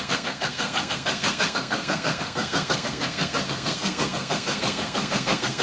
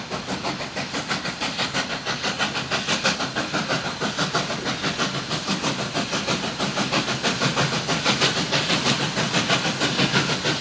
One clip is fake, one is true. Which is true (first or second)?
second